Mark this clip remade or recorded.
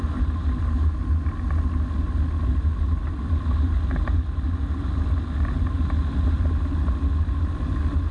recorded